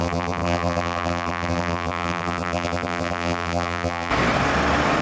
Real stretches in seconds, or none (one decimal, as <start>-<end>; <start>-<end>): 4.1-5.0